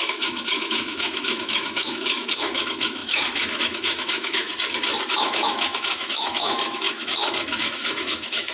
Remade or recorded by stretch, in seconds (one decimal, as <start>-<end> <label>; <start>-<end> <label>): 0.0-4.5 remade; 4.5-5.1 recorded; 5.1-8.5 remade